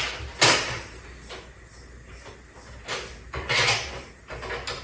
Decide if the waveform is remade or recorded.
recorded